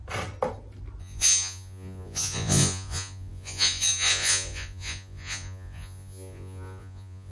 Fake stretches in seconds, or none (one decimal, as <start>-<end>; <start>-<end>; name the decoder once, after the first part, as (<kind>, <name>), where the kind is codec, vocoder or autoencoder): 1.0-7.3 (vocoder, Vocos)